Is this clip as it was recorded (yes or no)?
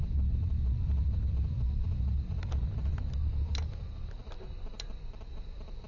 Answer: yes